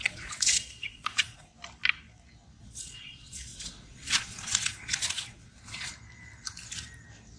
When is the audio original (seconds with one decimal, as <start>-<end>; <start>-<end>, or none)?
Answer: 1.5-2.6; 5.9-7.4